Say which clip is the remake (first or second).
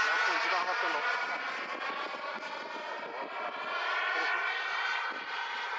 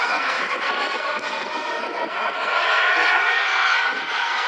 second